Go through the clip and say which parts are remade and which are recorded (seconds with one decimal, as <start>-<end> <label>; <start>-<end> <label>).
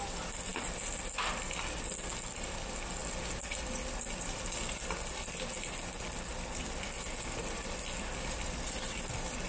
0.0-9.5 recorded